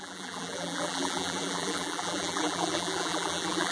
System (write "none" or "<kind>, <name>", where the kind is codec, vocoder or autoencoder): vocoder, BigVGAN v2